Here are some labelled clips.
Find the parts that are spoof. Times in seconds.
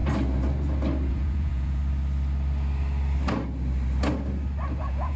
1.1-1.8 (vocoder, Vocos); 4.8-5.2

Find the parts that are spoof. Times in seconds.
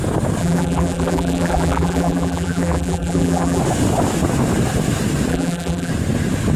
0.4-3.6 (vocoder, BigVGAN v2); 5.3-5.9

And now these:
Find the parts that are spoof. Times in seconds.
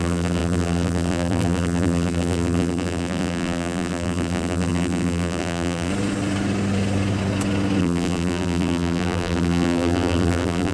0.0-5.9 (vocoder, BigVGAN v2); 7.8-10.7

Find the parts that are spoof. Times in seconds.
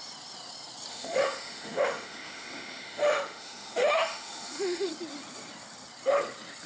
0.9-4.9 (autoencoder, DAC-VAE)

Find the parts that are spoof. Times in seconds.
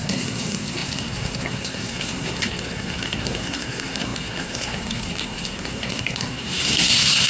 0.0-7.3 (codec, SNAC)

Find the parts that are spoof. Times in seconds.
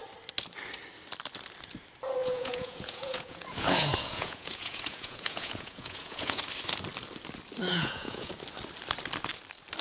2.2-6.4 (vocoder, Vocos); 7.7-8.3